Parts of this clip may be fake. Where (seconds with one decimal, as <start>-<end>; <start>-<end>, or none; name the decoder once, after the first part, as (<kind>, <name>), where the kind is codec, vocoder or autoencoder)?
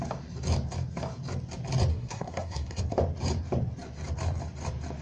1.9-2.8 (codec, SNAC)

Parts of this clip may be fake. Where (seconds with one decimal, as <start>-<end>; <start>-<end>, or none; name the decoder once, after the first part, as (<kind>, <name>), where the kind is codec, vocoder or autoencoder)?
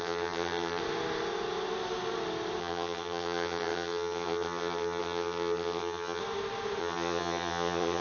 0.0-0.8 (vocoder, HiFi-GAN); 2.6-6.2; 6.8-8.0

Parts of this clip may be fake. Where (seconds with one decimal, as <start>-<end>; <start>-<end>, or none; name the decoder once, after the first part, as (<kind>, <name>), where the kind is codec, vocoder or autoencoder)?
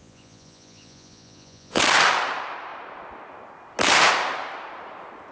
0.0-1.8 (vocoder, Vocos)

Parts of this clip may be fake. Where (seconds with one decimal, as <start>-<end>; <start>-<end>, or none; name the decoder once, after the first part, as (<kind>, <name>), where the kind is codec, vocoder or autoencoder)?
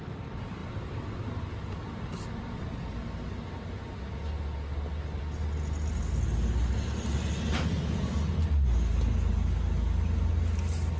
none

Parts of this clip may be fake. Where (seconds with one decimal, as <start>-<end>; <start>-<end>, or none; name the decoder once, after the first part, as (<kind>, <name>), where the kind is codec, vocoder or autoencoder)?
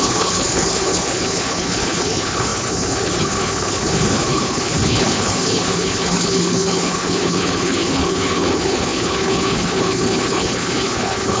0.0-11.4 (codec, HILCodec)